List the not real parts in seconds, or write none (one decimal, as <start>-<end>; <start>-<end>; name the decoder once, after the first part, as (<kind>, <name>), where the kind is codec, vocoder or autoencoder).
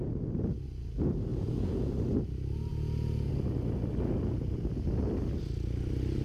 1.3-1.9 (vocoder, Vocos); 2.7-3.3